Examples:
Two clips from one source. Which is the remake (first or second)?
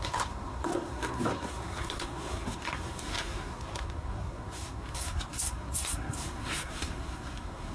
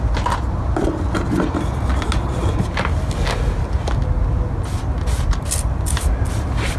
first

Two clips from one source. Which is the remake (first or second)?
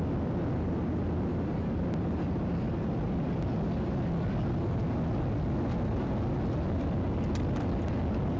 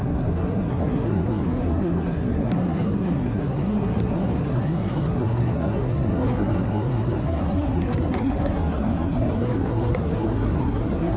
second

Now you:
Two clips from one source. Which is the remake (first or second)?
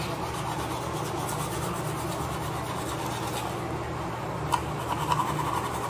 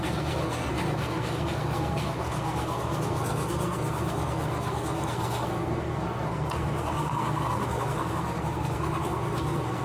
second